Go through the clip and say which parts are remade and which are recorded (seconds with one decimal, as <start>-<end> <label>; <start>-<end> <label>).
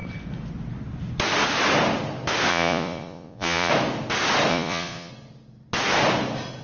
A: 0.0-2.5 recorded; 2.5-3.7 remade; 3.7-4.5 recorded; 4.5-5.1 remade; 5.1-6.6 recorded